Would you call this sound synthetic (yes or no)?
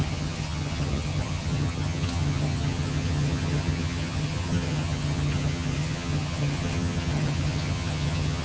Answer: yes